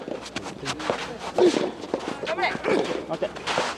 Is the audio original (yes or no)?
yes